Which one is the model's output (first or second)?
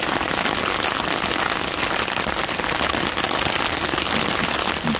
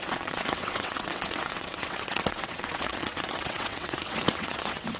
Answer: second